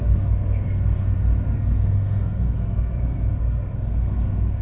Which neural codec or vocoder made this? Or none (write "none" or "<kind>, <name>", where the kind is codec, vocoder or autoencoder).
codec, SNAC